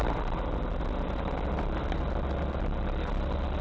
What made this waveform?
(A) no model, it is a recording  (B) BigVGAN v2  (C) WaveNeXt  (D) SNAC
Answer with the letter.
A